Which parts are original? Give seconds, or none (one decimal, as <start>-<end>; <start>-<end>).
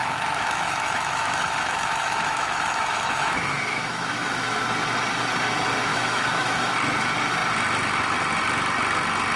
4.6-5.9; 6.7-9.4